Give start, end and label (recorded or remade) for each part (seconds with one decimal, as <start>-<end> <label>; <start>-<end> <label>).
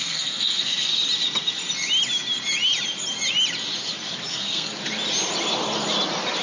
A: 0.0-0.9 remade; 0.9-4.3 recorded; 4.3-4.7 remade; 4.7-6.4 recorded